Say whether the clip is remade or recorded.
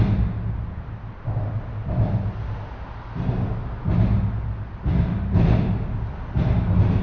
recorded